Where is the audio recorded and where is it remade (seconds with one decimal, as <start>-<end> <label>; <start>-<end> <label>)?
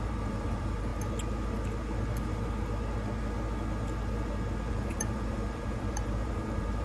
0.0-0.9 remade; 0.9-4.7 recorded; 4.7-6.8 remade